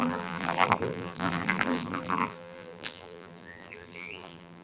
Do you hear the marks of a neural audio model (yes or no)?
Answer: yes